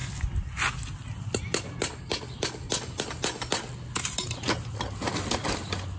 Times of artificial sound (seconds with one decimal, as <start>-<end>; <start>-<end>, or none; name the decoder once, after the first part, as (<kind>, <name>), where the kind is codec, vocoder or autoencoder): none